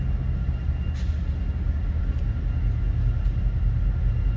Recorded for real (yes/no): yes